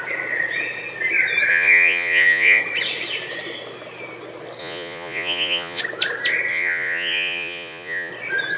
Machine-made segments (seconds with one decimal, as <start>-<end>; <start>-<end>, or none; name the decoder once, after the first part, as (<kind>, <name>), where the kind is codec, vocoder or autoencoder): 1.5-2.6 (vocoder, Vocos); 4.6-5.8; 6.5-8.1